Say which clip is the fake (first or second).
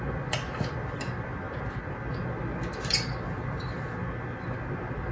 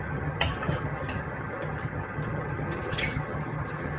second